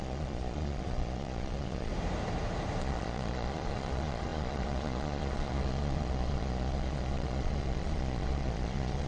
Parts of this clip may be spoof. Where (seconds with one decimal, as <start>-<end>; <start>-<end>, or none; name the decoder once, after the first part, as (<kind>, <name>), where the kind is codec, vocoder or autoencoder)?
0.0-1.9 (vocoder, Vocos); 2.8-9.1